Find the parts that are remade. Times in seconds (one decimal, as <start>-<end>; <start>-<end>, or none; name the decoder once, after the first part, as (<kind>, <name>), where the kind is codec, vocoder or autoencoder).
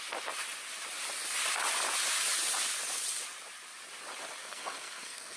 4.4-5.4 (codec, SNAC)